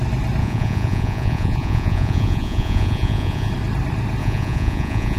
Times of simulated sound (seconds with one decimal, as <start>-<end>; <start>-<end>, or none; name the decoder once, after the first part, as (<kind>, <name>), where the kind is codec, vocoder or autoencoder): 0.4-3.5 (vocoder, Vocos); 4.2-5.2